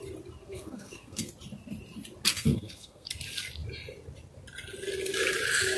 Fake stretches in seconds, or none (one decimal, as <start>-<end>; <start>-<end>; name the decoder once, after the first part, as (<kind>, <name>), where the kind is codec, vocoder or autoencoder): 0.4-1.3 (codec, SNAC); 2.3-3.1